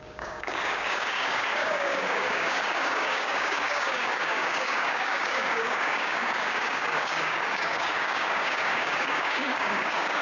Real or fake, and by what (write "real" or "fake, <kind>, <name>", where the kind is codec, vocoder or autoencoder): fake, codec, DAC